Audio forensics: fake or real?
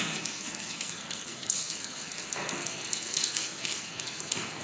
fake